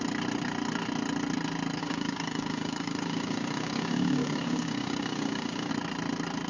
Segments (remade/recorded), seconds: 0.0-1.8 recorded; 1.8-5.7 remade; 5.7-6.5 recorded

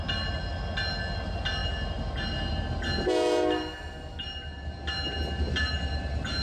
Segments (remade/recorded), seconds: 0.0-6.4 recorded

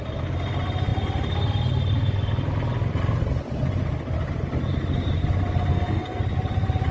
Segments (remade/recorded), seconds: 0.0-5.7 recorded; 5.7-6.2 remade; 6.2-6.9 recorded

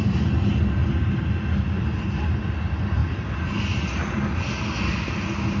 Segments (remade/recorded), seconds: 0.0-5.6 recorded

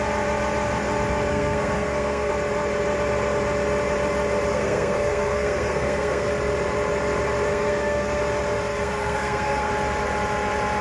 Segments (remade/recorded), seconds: 0.0-1.3 recorded; 1.3-2.3 remade; 2.3-4.5 recorded; 4.5-6.3 remade; 6.3-7.5 recorded; 7.5-8.2 remade; 8.2-8.7 recorded; 8.7-9.7 remade; 9.7-10.8 recorded

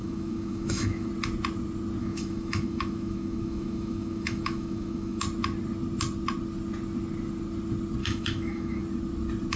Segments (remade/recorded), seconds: 0.0-1.1 remade; 1.1-2.0 recorded; 2.0-5.2 remade; 5.2-8.0 recorded; 8.0-8.8 remade; 8.8-9.6 recorded

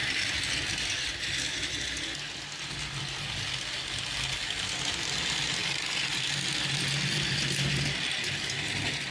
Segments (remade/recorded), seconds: 0.0-9.1 recorded